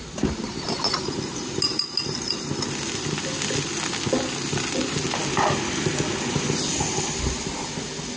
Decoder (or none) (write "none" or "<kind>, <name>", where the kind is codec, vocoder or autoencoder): none